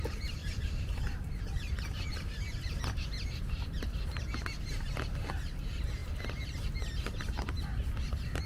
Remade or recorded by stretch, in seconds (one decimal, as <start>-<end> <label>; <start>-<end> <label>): 0.0-0.4 recorded; 0.4-2.7 remade; 2.7-8.5 recorded